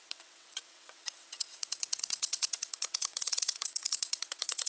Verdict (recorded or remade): remade